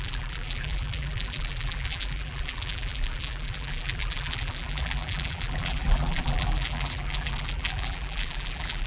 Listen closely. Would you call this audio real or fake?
fake